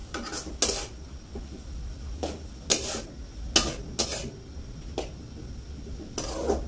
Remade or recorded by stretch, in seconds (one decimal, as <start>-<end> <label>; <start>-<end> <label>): 0.0-6.7 recorded